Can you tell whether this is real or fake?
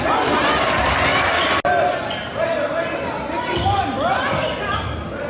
real